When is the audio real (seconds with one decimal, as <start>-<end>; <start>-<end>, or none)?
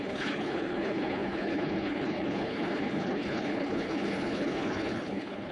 none